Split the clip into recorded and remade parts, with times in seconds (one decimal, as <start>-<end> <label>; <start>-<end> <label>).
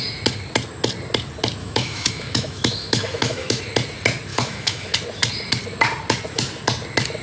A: 0.0-1.6 recorded; 1.6-3.6 remade; 3.6-4.3 recorded; 4.3-4.9 remade; 4.9-7.2 recorded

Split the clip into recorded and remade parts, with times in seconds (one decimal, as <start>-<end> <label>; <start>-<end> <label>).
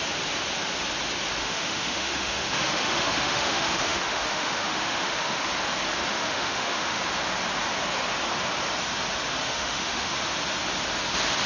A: 0.0-1.4 recorded; 1.4-5.5 remade; 5.5-6.1 recorded; 6.1-7.0 remade; 7.0-9.4 recorded; 9.4-10.1 remade; 10.1-11.5 recorded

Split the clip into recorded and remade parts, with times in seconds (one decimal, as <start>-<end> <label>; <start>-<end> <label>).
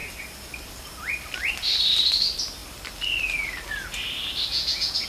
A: 0.0-4.5 recorded; 4.5-5.1 remade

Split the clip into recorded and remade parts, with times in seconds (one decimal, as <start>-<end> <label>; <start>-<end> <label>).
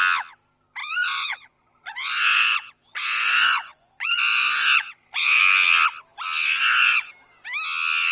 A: 0.0-0.8 recorded; 0.8-5.4 remade; 5.4-6.6 recorded; 6.6-7.1 remade; 7.1-8.1 recorded